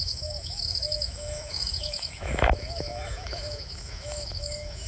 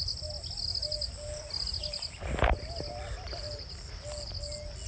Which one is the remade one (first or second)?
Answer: first